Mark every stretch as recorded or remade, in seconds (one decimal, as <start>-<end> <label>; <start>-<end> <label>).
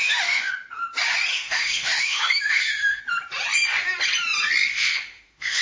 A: 0.0-0.5 remade; 0.5-1.3 recorded; 1.3-3.0 remade; 3.0-4.7 recorded; 4.7-5.6 remade